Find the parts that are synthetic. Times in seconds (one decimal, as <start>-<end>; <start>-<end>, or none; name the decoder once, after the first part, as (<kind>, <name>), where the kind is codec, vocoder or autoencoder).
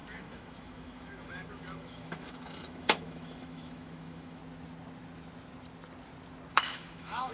0.0-4.4 (autoencoder, DAC-VAE); 6.5-7.3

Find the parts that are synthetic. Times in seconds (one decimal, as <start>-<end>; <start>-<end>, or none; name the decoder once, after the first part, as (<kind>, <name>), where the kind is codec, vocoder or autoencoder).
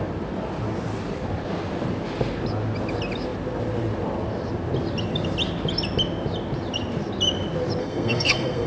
7.8-8.7 (codec, SNAC)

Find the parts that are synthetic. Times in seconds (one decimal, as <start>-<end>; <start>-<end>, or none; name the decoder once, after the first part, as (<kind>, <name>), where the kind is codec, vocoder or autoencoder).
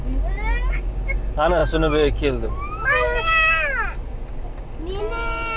none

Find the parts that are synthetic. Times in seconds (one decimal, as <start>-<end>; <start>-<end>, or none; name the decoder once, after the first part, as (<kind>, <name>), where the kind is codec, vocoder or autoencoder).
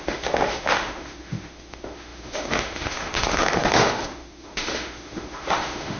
0.0-6.0 (autoencoder, DAC-VAE)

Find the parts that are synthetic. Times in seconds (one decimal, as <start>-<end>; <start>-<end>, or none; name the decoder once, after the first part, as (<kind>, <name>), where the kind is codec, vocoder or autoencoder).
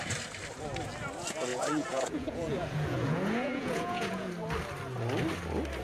1.5-4.3 (vocoder, Vocos)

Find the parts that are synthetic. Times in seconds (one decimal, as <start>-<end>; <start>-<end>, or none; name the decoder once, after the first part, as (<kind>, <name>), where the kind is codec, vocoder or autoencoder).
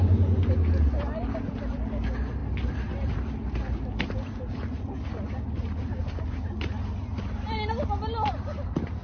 none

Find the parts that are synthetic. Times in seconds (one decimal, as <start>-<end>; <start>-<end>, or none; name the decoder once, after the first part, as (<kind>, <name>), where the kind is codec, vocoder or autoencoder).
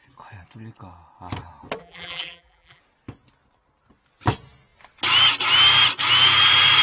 1.8-2.8 (vocoder, BigVGAN v2)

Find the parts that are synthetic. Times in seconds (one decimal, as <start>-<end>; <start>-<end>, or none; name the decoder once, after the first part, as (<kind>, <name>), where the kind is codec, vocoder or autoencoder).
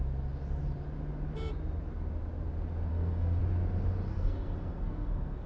2.9-3.4 (codec, SNAC); 4.1-5.5